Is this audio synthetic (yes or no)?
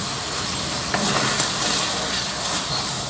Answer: no